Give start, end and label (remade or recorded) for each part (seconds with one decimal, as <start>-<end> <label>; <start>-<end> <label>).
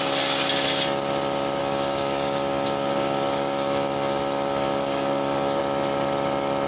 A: 0.0-1.6 recorded; 1.6-5.6 remade; 5.6-6.7 recorded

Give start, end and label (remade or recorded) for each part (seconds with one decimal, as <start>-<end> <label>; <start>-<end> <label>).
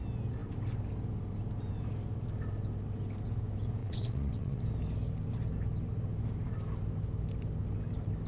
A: 0.0-3.8 recorded; 3.8-4.6 remade; 4.6-8.3 recorded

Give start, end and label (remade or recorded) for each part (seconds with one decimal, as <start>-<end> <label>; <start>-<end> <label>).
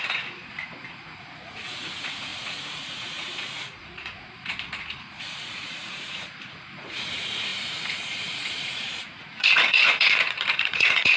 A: 0.0-11.2 remade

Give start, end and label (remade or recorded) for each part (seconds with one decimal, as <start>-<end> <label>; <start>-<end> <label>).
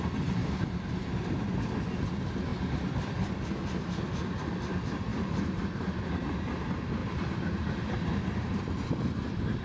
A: 0.0-5.1 recorded; 5.1-5.6 remade; 5.6-7.0 recorded; 7.0-8.6 remade; 8.6-9.6 recorded